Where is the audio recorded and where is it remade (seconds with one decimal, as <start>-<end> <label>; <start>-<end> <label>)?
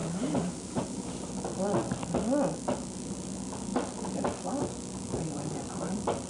0.0-1.3 remade; 1.3-6.3 recorded